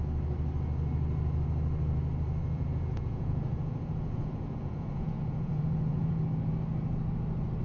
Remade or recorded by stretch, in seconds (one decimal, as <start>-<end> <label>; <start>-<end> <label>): 0.0-2.4 recorded; 2.4-6.2 remade; 6.2-7.6 recorded